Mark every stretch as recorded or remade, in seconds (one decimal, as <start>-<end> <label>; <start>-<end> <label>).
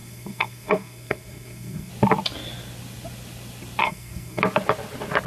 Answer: 0.0-1.9 remade; 1.9-3.8 recorded; 3.8-4.4 remade; 4.4-5.3 recorded